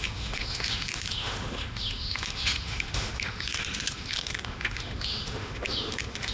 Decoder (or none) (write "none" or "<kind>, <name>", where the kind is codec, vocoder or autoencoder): autoencoder, DAC-VAE